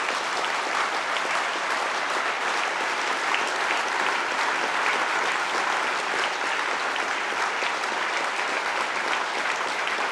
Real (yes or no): yes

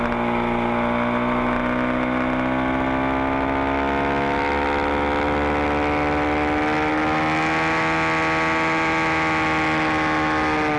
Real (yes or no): yes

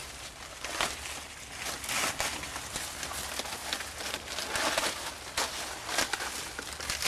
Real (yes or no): yes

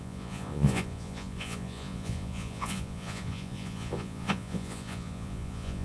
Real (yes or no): no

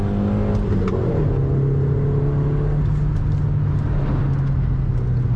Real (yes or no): yes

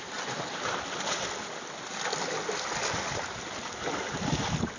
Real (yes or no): yes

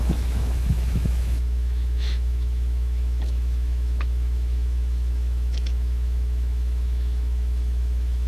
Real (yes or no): no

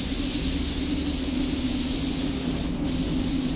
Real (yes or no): yes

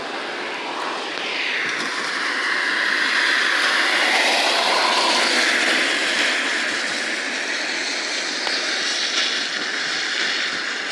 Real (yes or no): yes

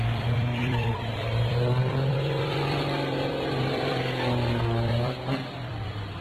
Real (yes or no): no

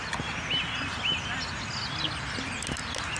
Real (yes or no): yes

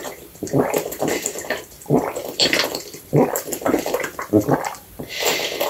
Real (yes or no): no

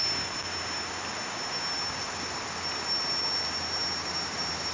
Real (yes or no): yes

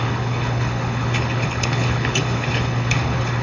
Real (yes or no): no